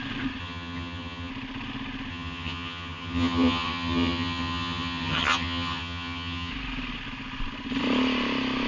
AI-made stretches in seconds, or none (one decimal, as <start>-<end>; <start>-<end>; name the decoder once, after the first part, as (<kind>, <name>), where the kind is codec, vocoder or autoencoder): 0.4-1.3 (vocoder, HiFi-GAN); 2.1-6.5